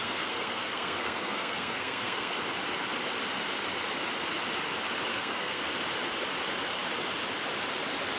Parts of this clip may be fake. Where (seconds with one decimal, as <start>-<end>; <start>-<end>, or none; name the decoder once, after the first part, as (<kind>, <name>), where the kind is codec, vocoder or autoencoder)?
0.0-2.3 (codec, SNAC); 5.1-5.6